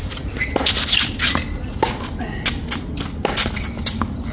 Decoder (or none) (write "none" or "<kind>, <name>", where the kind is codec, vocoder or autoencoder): none